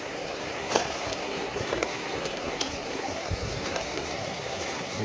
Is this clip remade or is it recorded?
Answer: remade